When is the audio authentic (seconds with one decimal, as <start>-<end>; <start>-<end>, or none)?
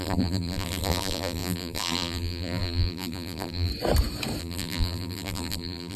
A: 3.7-4.4